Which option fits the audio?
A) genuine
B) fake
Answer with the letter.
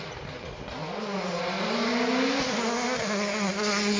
A